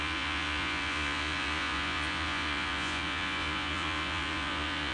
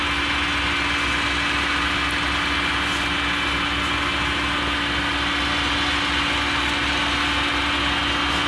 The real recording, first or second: second